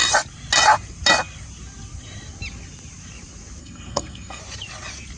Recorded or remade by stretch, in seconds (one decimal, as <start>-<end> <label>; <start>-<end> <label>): 0.0-3.6 recorded; 3.6-4.4 remade; 4.4-5.2 recorded